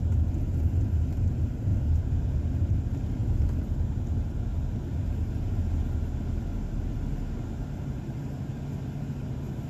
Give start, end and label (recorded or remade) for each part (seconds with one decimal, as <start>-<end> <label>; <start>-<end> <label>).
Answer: 0.0-9.7 recorded